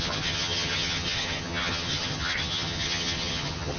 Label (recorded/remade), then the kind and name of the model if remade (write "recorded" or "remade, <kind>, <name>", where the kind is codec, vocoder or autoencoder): remade, vocoder, HiFi-GAN